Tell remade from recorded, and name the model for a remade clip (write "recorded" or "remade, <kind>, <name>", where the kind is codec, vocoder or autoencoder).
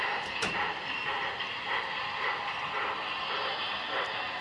recorded